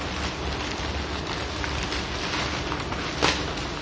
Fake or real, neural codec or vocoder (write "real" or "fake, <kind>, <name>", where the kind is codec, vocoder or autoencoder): real